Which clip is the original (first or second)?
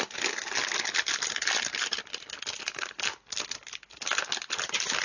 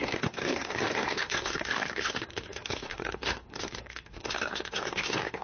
first